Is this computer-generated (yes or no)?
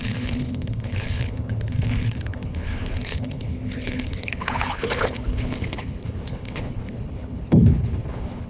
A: yes